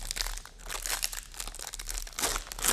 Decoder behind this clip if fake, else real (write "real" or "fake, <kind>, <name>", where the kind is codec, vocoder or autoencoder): real